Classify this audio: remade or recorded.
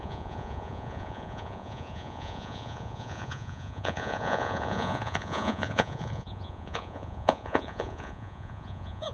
remade